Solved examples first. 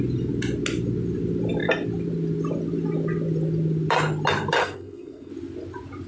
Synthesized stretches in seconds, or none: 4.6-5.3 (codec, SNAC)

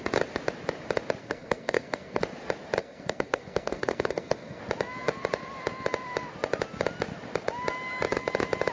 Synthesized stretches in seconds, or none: 1.2-2.2 (codec, SNAC); 2.8-4.6

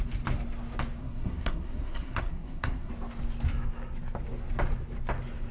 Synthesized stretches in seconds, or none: 1.0-2.9 (codec, SNAC)

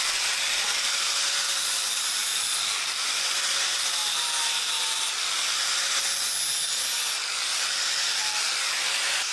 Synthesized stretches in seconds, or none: none

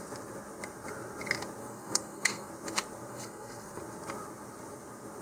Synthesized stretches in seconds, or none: 1.6-2.5 (codec, SNAC); 3.1-3.8

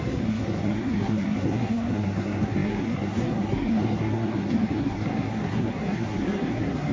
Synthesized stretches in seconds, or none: 0.0-6.9 (codec, SNAC)

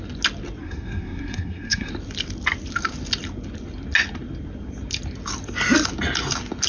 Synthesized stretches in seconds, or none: 0.6-1.9 (codec, SNAC)

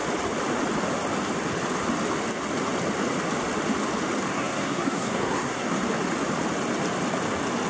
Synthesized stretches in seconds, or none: 4.3-5.8 (codec, SNAC)